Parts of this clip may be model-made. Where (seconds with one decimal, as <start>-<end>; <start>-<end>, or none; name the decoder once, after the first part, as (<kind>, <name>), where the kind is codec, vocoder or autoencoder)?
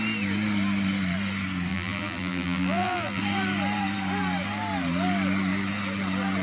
1.7-3.2 (vocoder, BigVGAN v2)